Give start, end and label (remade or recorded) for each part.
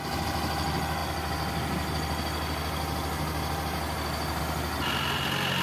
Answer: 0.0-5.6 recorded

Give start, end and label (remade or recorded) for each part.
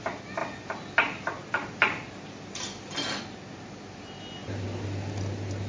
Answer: 0.0-5.7 recorded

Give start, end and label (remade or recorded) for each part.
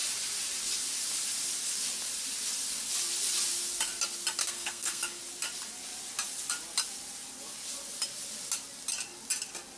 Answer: 0.0-4.4 recorded; 4.4-5.2 remade; 5.2-9.8 recorded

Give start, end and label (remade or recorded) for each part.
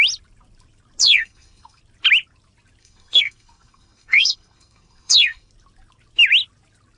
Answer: 0.0-1.0 recorded; 1.0-1.8 remade; 1.8-2.8 recorded; 2.8-5.5 remade; 5.5-7.0 recorded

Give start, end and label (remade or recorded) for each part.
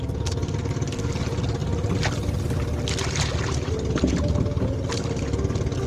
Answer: 0.0-5.9 recorded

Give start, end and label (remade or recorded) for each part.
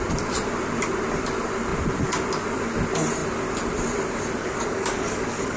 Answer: 0.0-4.4 recorded; 4.4-5.6 remade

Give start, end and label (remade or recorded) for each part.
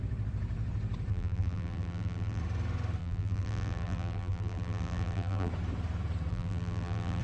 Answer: 0.0-1.1 recorded; 1.1-2.4 remade; 2.4-3.0 recorded; 3.0-5.5 remade; 5.5-6.3 recorded; 6.3-7.2 remade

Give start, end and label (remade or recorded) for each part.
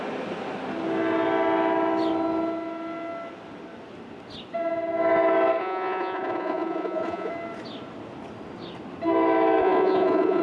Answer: 0.0-5.6 recorded; 5.6-7.3 remade; 7.3-9.6 recorded; 9.6-10.4 remade